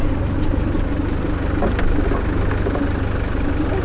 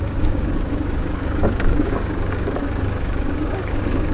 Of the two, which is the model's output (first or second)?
second